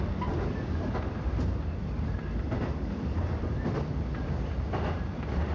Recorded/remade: recorded